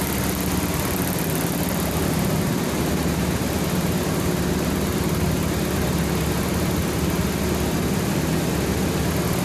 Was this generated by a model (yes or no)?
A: no